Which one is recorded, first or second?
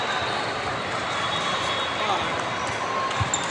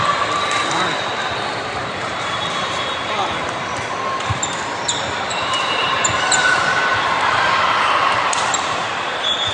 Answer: first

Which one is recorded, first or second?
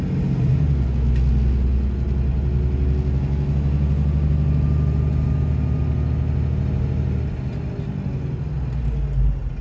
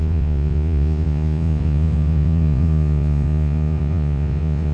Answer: first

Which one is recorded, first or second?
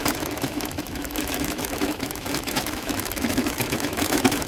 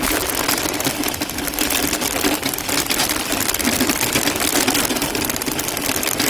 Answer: second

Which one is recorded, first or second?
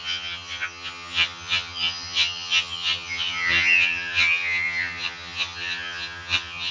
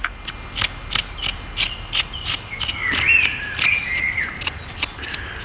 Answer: second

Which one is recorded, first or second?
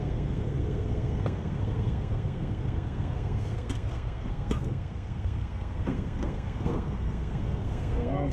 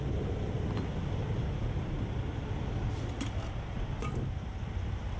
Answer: second